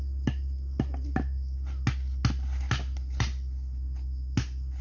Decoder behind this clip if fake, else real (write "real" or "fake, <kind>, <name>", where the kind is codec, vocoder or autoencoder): real